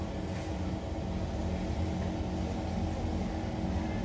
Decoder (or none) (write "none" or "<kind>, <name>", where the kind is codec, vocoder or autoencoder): none